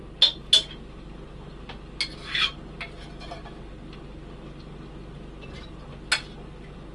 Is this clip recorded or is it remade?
recorded